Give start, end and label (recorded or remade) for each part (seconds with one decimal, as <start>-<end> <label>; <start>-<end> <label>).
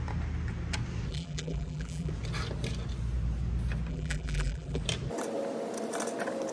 0.0-1.1 recorded; 1.1-2.1 remade; 2.1-3.9 recorded; 3.9-4.8 remade; 4.8-6.5 recorded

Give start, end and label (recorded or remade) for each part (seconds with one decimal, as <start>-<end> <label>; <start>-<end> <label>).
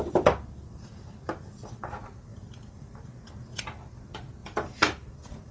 0.0-2.3 recorded; 2.3-3.1 remade; 3.1-4.4 recorded; 4.4-5.5 remade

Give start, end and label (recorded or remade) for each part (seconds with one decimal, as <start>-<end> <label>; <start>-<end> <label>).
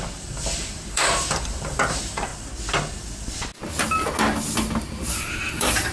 0.0-2.3 remade; 2.3-5.1 recorded; 5.1-5.9 remade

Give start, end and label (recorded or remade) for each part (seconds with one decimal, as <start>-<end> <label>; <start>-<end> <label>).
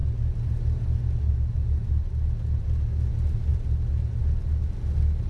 0.0-5.3 recorded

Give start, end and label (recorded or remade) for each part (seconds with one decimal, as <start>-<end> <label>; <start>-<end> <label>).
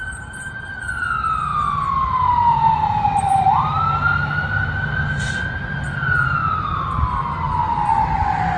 0.0-6.4 recorded; 6.4-7.1 remade; 7.1-8.6 recorded